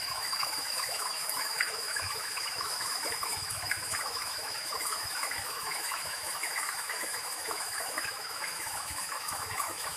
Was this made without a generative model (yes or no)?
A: no